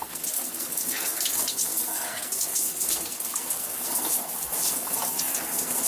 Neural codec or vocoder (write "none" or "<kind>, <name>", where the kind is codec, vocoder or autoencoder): codec, SNAC